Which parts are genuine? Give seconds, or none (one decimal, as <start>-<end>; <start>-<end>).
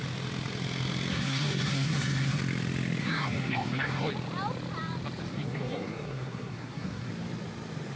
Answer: 0.0-1.1; 2.4-3.0; 4.1-5.3; 7.1-8.0